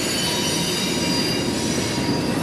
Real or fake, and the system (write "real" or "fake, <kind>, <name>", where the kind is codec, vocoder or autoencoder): real